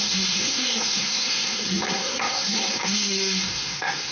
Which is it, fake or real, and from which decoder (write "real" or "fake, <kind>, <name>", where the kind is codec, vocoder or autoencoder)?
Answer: fake, codec, SNAC